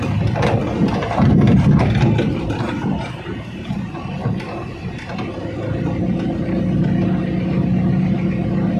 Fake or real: real